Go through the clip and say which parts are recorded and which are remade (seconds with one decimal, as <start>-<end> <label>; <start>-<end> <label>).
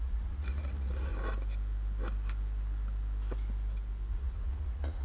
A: 0.0-1.1 remade; 1.1-4.1 recorded; 4.1-5.0 remade